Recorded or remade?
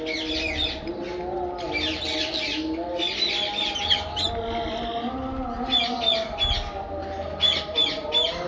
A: recorded